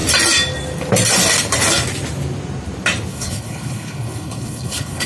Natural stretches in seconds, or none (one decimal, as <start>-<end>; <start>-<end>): 0.0-3.1